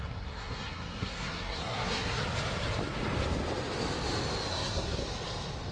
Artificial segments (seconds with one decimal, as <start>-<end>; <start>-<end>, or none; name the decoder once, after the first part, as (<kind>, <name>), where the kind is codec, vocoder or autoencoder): 0.0-2.2 (codec, SNAC); 4.5-5.0